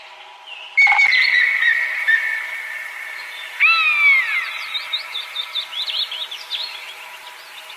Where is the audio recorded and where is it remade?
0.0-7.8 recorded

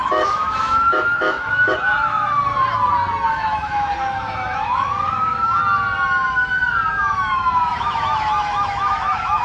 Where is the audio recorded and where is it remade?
0.0-2.4 remade; 2.4-3.3 recorded; 3.3-5.6 remade; 5.6-6.9 recorded; 6.9-9.4 remade

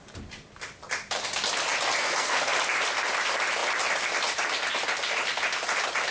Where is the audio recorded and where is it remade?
0.0-2.0 recorded; 2.0-2.5 remade; 2.5-6.1 recorded

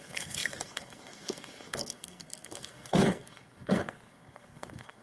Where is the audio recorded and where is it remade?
0.0-5.0 remade

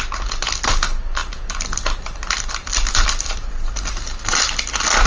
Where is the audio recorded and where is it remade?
0.0-1.2 recorded; 1.2-3.6 remade; 3.6-5.1 recorded

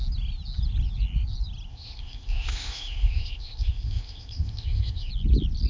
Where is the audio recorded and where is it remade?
0.0-1.7 recorded; 1.7-5.1 remade; 5.1-5.7 recorded

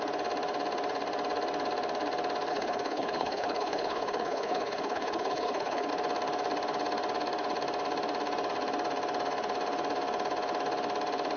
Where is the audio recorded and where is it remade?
0.0-2.5 recorded; 2.5-5.9 remade; 5.9-11.4 recorded

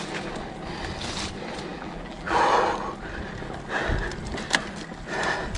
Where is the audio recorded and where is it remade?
0.0-1.7 recorded; 1.7-2.4 remade; 2.4-5.6 recorded